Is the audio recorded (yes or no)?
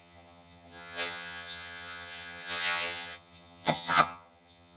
no